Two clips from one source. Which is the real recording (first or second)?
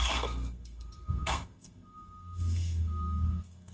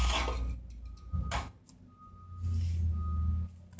second